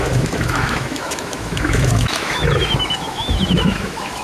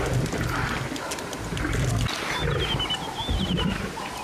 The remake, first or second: first